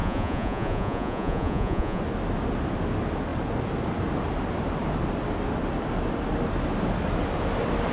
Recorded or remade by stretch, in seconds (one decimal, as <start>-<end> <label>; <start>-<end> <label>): 0.0-2.0 remade; 2.0-7.9 recorded